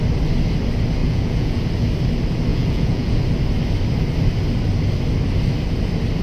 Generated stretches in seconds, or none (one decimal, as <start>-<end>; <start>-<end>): 1.0-1.6; 2.5-3.2